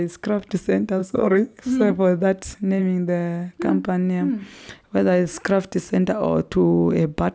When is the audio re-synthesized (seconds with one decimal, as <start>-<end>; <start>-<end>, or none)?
1.0-1.9